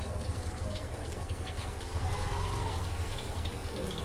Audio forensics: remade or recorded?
remade